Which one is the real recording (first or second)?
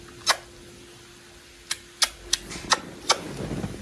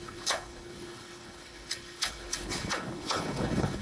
first